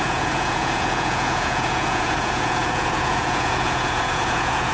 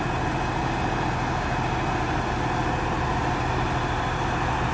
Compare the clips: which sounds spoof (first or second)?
first